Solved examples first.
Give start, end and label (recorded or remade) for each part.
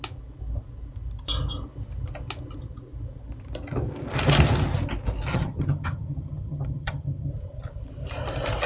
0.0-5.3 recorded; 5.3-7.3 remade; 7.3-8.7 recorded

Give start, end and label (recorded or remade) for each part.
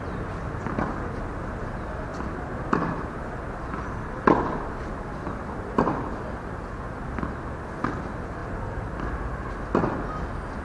0.0-8.4 recorded; 8.4-9.5 remade; 9.5-10.6 recorded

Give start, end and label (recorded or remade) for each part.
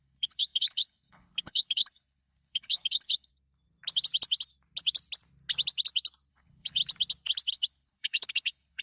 0.0-3.3 remade; 3.3-6.3 recorded; 6.3-6.8 remade; 6.8-7.5 recorded; 7.5-8.8 remade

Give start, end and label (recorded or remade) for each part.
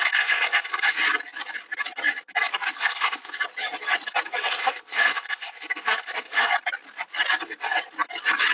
0.0-1.0 remade; 1.0-2.8 recorded; 2.8-3.4 remade; 3.4-4.5 recorded; 4.5-6.5 remade; 6.5-8.5 recorded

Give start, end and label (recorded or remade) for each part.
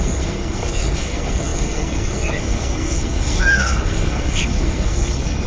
0.0-5.5 remade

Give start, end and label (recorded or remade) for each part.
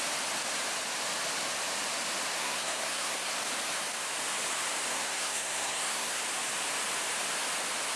0.0-2.4 recorded; 2.4-3.3 remade; 3.3-4.9 recorded; 4.9-6.2 remade; 6.2-8.0 recorded